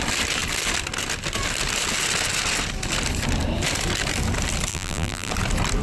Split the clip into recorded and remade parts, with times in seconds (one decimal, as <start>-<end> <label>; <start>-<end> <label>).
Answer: 0.0-4.7 recorded; 4.7-5.3 remade; 5.3-5.8 recorded

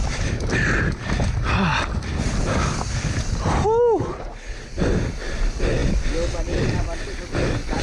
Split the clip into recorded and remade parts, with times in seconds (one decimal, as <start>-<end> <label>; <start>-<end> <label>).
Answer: 0.0-7.8 recorded

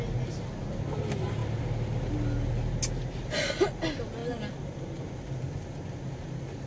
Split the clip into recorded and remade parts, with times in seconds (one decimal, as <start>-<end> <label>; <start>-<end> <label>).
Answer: 0.0-6.7 recorded

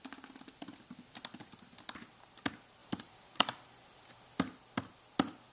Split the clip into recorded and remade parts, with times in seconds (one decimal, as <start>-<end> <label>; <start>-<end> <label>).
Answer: 0.0-2.8 recorded; 2.8-4.4 remade; 4.4-5.5 recorded

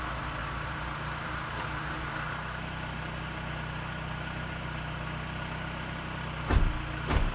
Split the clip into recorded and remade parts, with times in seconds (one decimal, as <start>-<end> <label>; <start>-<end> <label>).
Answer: 0.0-0.4 recorded; 0.4-2.1 remade; 2.1-7.3 recorded